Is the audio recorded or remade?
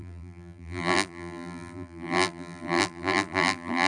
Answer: remade